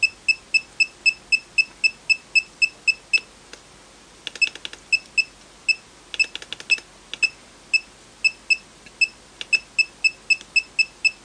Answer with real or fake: real